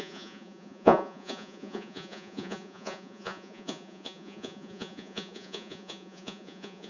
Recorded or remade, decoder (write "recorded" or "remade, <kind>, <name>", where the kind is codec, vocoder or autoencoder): remade, vocoder, Vocos